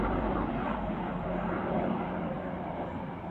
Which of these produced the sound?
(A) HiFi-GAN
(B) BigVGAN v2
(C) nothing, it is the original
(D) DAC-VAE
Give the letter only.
B